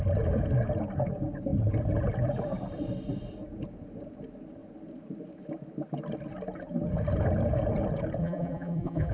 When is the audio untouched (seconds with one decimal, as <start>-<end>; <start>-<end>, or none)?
0.0-8.2